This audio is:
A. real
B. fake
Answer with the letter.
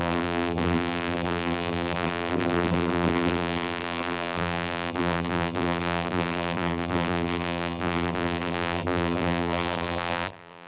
B